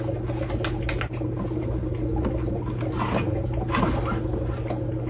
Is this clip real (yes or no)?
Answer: yes